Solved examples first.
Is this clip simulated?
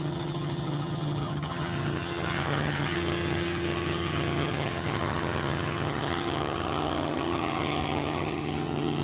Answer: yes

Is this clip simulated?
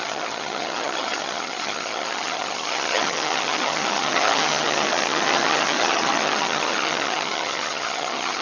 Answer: yes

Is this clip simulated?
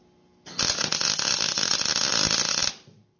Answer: no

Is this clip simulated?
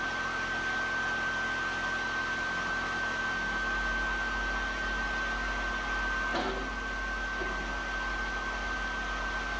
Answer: no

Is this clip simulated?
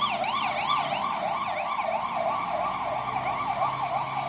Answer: no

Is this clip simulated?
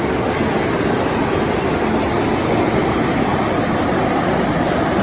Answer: no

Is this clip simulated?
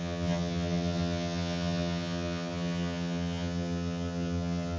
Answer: yes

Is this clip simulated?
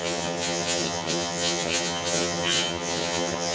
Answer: yes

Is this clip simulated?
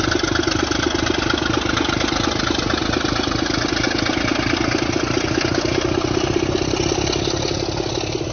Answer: no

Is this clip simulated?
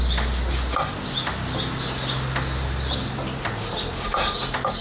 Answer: no